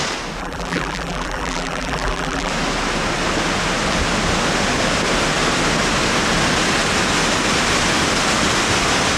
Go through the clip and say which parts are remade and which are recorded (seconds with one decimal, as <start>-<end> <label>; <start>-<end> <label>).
0.0-0.4 recorded; 0.4-2.5 remade; 2.5-9.2 recorded